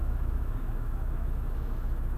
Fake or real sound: fake